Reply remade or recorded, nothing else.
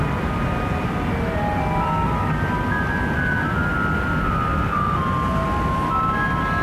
recorded